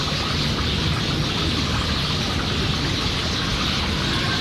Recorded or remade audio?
recorded